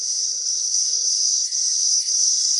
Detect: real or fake fake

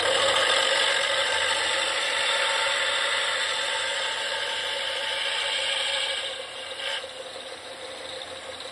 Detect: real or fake real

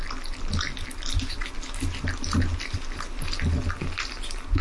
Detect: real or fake real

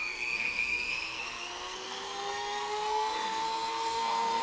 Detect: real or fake fake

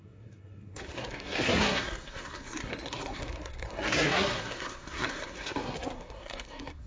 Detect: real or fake fake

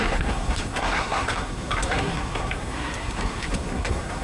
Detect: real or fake fake